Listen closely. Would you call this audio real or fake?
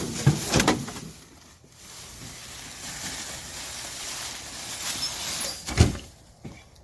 real